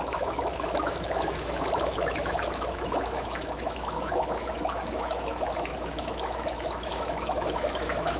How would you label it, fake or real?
fake